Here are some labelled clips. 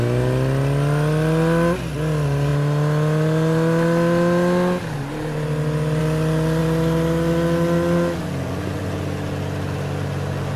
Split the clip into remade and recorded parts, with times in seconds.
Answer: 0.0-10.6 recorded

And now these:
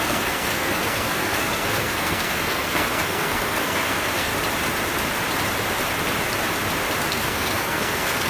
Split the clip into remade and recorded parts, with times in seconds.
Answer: 0.0-4.3 remade; 4.3-7.1 recorded; 7.1-8.3 remade

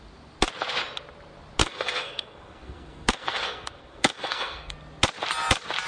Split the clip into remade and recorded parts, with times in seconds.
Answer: 0.0-1.6 recorded; 1.6-4.7 remade; 4.7-5.9 recorded